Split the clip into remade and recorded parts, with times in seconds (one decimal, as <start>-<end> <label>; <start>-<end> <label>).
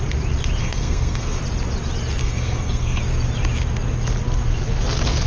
0.0-0.6 recorded; 0.6-1.4 remade; 1.4-2.2 recorded; 2.2-3.0 remade; 3.0-5.3 recorded